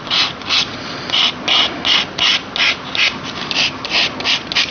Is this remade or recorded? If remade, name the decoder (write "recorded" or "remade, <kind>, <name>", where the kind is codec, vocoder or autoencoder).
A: recorded